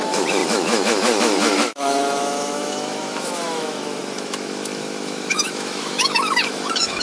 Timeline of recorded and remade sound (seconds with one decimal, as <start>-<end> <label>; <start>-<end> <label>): 0.0-7.0 remade